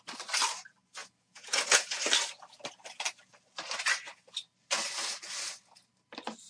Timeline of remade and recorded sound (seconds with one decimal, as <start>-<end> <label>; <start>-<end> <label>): 0.0-1.0 recorded; 1.0-2.0 remade; 2.0-6.5 recorded